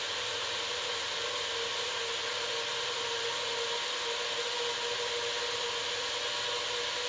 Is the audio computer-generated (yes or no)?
no